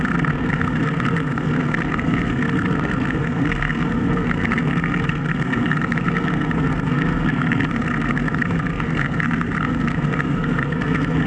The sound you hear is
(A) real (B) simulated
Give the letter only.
B